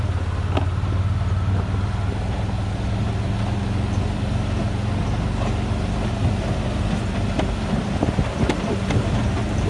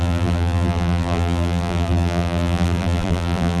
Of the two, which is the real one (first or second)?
first